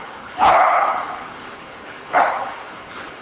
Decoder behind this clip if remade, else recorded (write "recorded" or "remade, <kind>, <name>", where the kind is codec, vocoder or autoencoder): remade, codec, HILCodec